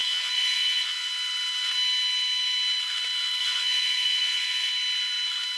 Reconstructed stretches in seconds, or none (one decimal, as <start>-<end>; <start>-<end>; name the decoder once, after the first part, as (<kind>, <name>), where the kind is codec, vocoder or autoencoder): 0.0-1.1 (vocoder, Vocos); 3.4-4.7